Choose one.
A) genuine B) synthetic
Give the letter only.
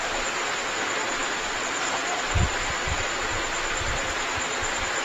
B